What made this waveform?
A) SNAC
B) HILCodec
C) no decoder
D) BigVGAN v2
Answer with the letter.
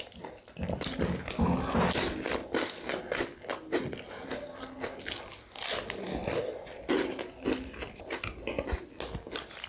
C